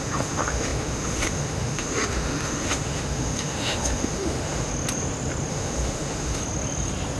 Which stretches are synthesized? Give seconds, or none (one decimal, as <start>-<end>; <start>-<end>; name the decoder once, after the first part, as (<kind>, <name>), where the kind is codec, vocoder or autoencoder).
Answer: 0.0-4.7 (autoencoder, DAC-VAE); 5.5-6.4